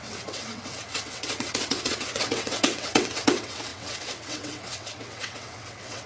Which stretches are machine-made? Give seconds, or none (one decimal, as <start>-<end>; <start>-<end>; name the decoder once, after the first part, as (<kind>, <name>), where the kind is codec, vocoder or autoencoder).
0.0-6.1 (vocoder, WaveNeXt)

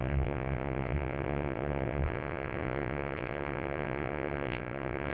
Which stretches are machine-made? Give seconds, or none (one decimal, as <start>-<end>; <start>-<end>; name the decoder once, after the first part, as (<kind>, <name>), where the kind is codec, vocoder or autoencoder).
0.0-5.1 (vocoder, WaveNeXt)

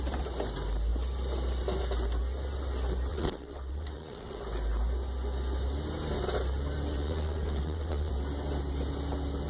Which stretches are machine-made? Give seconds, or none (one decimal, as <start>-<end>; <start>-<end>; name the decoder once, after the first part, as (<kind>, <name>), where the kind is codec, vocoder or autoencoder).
3.1-4.4 (vocoder, WaveNeXt); 6.9-8.1

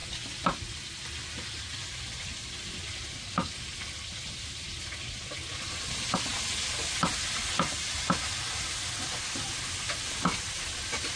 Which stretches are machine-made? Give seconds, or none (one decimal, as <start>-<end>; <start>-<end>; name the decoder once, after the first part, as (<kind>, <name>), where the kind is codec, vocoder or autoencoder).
none

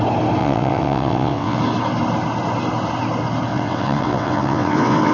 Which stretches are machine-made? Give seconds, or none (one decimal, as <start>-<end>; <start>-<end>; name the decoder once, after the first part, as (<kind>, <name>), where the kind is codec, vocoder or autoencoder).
0.4-1.6 (vocoder, WaveNeXt); 3.5-5.1

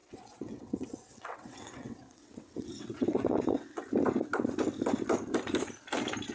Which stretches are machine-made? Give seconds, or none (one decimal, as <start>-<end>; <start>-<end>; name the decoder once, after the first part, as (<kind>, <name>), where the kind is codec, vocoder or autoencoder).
0.0-3.8 (vocoder, WaveNeXt)

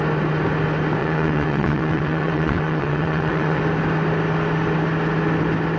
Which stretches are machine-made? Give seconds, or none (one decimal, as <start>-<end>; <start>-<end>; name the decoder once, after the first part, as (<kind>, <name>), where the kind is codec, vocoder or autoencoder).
1.0-3.6 (vocoder, WaveNeXt)

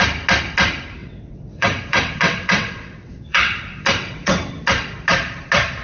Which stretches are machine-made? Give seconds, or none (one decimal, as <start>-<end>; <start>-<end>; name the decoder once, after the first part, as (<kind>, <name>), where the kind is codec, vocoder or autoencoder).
1.0-4.5 (vocoder, WaveNeXt)